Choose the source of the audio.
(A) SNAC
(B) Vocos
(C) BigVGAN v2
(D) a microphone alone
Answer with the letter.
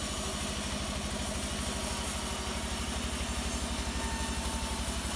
D